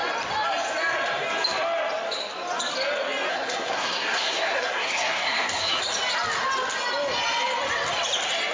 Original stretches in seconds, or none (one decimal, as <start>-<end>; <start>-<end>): 0.0-3.3; 5.8-8.5